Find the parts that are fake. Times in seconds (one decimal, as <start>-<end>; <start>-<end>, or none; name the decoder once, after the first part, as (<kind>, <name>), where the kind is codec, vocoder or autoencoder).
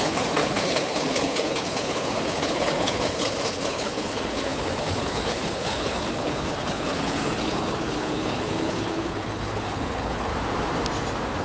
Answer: 0.0-10.3 (codec, HILCodec)